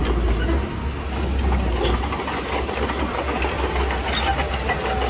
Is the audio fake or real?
real